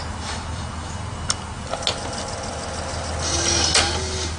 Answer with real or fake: real